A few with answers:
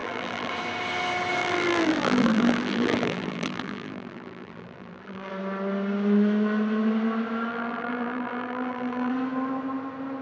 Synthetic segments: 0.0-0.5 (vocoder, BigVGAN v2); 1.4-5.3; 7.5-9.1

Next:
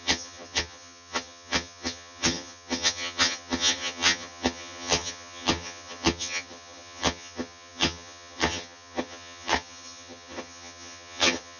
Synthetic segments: 0.0-11.6 (vocoder, HiFi-GAN)

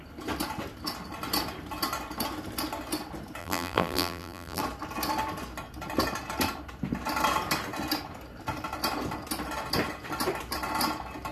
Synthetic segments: 3.4-4.6 (vocoder, BigVGAN v2)

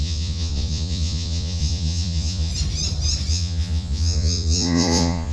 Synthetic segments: 0.0-2.5 (vocoder, Vocos); 3.3-5.3

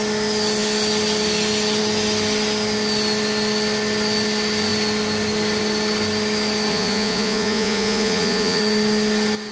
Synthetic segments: 6.7-8.6 (vocoder, Vocos)

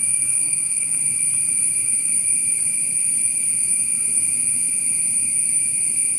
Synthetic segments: 0.0-1.1 (codec, SNAC)

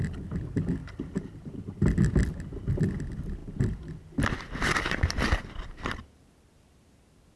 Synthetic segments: 0.8-1.6 (vocoder, BigVGAN v2); 3.4-6.3